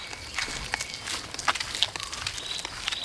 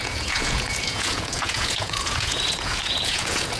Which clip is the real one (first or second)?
first